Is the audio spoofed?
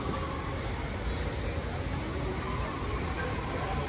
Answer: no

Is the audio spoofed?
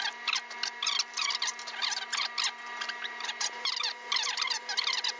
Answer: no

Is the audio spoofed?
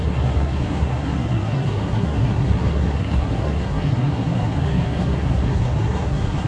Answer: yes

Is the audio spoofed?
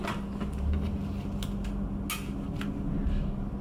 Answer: no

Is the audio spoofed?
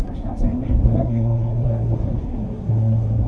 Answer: yes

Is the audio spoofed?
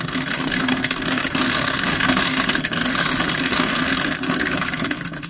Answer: yes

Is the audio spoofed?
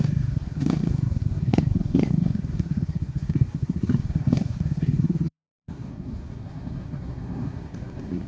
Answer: yes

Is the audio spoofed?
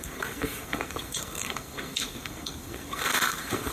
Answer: yes